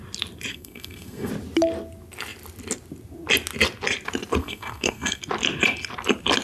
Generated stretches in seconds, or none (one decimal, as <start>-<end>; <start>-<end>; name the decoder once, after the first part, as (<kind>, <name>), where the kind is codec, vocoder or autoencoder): 0.5-1.3 (codec, SNAC); 4.4-5.2